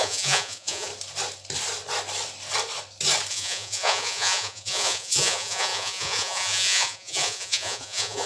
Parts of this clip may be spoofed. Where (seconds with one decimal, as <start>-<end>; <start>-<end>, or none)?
0.0-0.9; 3.3-8.3